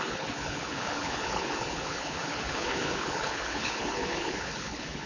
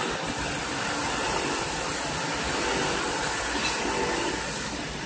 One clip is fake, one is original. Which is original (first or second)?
second